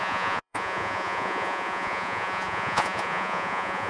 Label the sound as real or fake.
fake